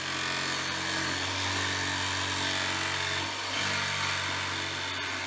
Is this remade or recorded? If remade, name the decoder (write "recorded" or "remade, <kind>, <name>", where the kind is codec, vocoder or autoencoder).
recorded